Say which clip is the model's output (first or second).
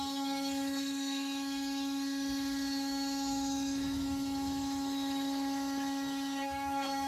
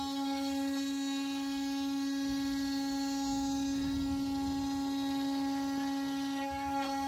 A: first